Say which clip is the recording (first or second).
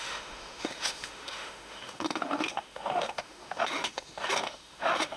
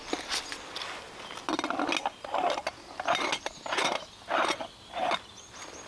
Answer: second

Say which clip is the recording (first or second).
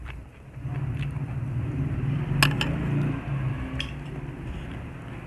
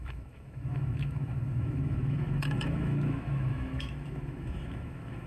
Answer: first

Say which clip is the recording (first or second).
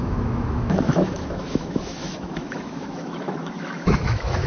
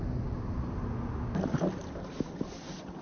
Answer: second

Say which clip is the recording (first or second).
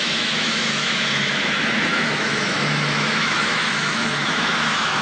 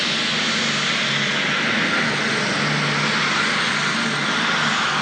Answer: second